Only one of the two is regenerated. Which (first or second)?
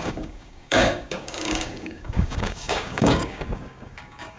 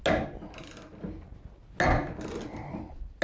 first